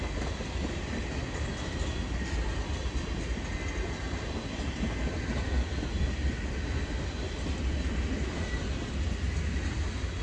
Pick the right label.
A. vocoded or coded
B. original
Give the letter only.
B